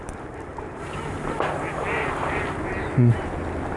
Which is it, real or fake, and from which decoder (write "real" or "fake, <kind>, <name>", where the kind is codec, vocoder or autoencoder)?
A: real